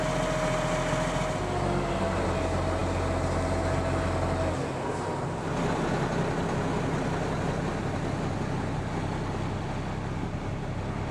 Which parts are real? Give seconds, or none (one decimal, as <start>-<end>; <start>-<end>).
0.0-11.1